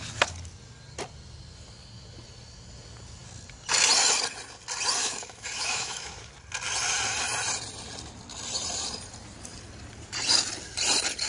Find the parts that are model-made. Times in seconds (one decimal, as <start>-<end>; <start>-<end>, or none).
5.0-6.3